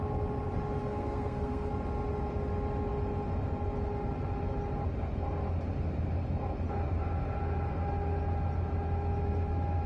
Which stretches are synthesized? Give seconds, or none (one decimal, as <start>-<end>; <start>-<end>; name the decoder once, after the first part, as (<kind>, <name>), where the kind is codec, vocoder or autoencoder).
0.8-1.7 (codec, SNAC)

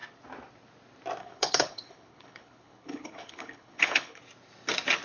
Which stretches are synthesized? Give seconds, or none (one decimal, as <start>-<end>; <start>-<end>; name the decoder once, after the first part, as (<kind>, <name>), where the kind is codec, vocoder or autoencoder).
1.2-4.2 (codec, HILCodec)

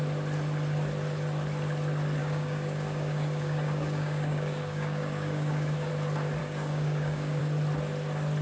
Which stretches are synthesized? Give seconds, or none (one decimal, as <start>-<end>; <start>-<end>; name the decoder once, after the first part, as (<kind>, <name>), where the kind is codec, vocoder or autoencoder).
2.2-5.9 (codec, DAC); 6.4-7.4

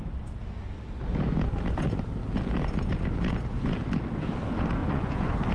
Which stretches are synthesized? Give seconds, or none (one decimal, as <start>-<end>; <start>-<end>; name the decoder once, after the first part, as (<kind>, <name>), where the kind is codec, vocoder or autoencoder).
4.8-5.5 (vocoder, Vocos)

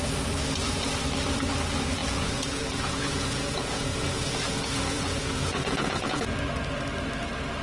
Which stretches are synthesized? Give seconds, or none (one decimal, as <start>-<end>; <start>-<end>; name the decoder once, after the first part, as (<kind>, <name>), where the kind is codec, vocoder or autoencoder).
2.0-6.3 (vocoder, Vocos)

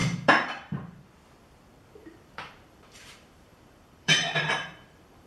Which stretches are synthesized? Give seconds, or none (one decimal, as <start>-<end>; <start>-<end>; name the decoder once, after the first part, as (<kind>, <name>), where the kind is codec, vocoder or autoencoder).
0.0-1.0 (vocoder, BigVGAN v2); 2.0-5.3